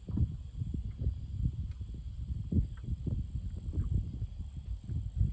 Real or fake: fake